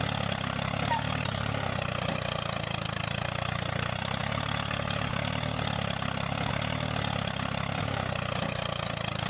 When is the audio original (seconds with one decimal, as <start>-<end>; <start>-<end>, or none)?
0.0-9.3